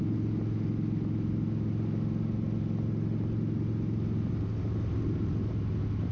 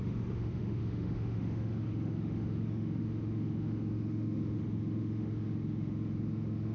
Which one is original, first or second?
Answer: first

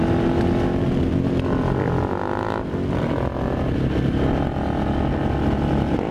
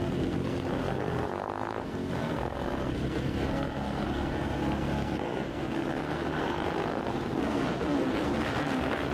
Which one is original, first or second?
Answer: first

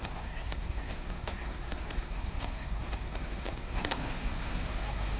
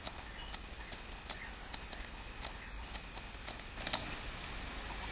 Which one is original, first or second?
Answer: second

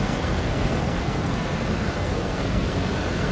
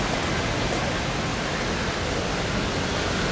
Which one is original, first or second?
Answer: second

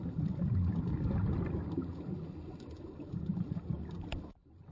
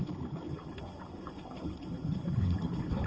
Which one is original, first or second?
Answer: first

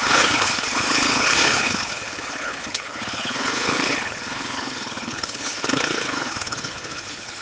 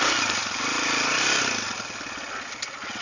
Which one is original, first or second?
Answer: second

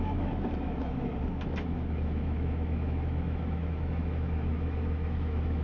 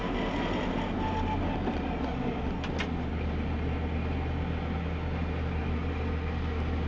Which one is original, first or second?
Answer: second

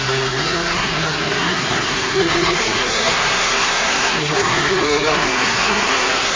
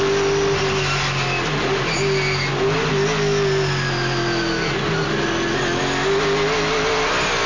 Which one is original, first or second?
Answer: second